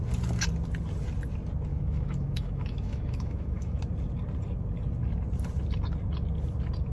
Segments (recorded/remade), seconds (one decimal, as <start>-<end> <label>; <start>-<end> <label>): 0.0-1.7 recorded; 1.7-3.8 remade; 3.8-6.9 recorded

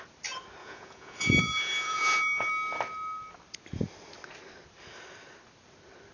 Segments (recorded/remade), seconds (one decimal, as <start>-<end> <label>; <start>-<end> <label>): 0.0-0.6 recorded; 0.6-2.5 remade; 2.5-6.1 recorded

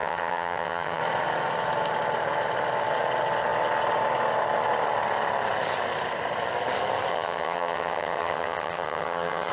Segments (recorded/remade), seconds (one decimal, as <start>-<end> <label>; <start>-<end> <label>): 0.0-1.0 remade; 1.0-7.1 recorded; 7.1-9.5 remade

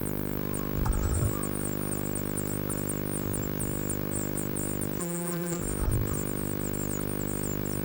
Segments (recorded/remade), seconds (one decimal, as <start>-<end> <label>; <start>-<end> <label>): 0.0-5.0 recorded; 5.0-5.6 remade; 5.6-7.8 recorded

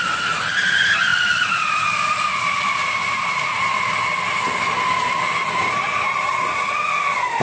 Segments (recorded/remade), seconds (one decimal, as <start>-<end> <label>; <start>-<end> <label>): 0.0-7.4 recorded

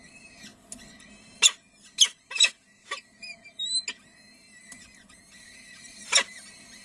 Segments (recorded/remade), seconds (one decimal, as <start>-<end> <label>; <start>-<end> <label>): 0.0-6.8 recorded

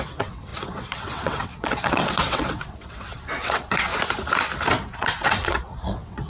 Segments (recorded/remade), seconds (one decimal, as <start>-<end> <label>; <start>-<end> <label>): 0.0-3.9 remade; 3.9-4.9 recorded; 4.9-6.3 remade